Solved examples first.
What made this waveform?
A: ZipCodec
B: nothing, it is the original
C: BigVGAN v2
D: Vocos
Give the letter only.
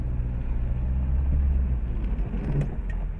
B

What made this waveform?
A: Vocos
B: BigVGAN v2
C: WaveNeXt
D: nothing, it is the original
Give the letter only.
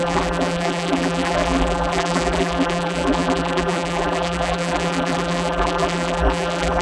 B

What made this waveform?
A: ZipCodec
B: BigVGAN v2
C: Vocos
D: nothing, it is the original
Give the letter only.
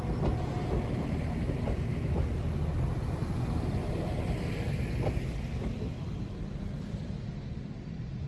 D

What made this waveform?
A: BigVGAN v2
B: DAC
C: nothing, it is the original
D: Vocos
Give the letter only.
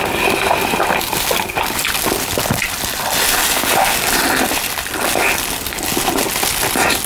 C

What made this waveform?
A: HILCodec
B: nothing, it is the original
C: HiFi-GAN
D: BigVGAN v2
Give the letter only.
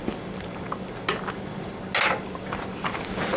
B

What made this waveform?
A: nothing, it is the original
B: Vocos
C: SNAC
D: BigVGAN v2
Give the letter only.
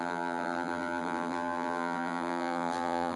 D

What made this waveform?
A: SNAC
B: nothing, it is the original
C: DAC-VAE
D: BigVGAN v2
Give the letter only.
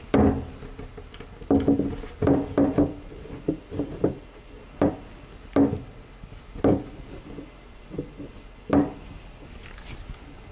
B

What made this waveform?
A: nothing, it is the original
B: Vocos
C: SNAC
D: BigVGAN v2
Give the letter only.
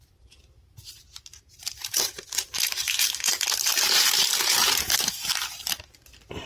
D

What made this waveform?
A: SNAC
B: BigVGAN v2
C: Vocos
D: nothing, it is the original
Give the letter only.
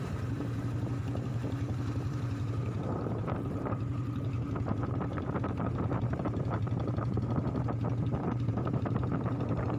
B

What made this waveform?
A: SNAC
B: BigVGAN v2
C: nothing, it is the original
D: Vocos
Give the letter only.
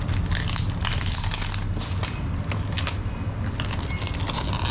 C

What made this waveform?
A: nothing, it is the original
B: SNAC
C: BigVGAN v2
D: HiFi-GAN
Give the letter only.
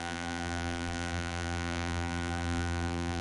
C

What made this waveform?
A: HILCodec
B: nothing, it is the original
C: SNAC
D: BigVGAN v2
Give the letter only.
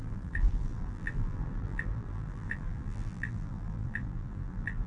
D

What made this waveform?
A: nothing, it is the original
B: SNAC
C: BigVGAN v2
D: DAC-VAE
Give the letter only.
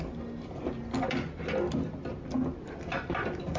A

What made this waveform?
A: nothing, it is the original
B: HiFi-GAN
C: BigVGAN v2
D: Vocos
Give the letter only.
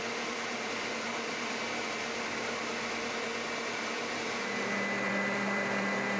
C